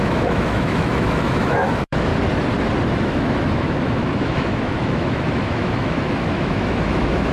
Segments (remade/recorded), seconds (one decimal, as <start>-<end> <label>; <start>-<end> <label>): 0.0-2.1 remade; 2.1-2.9 recorded; 2.9-7.3 remade